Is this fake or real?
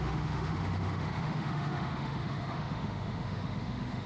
fake